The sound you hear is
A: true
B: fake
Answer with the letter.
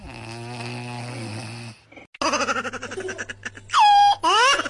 A